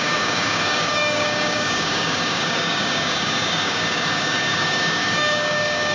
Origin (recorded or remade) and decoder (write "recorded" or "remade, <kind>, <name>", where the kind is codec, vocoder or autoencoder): remade, codec, DAC